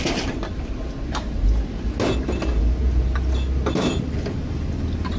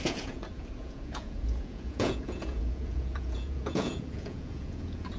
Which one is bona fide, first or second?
first